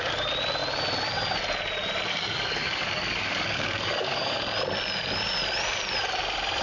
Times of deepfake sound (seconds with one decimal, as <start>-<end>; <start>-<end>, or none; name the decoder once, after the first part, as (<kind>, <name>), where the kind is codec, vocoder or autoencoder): 2.1-4.4 (codec, DAC)